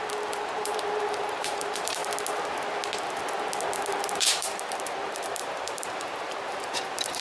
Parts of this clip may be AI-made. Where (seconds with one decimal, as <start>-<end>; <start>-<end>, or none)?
0.0-2.0; 4.2-7.2